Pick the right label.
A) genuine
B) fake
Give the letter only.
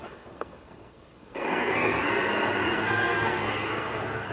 B